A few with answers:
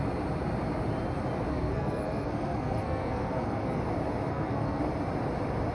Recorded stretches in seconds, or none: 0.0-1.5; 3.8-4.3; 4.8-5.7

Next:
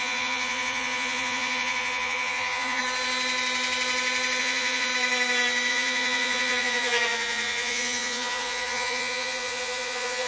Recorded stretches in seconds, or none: 2.8-4.4; 4.9-5.7